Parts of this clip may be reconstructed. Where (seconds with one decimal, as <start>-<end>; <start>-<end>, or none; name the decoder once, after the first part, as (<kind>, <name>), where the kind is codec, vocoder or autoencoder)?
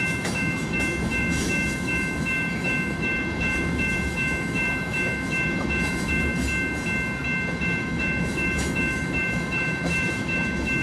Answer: 0.0-6.3 (autoencoder, DAC-VAE); 7.5-10.8